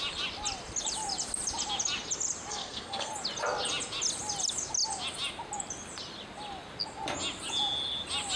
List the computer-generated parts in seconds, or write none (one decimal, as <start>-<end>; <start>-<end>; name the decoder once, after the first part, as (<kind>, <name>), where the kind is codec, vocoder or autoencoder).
2.5-3.1 (codec, SNAC)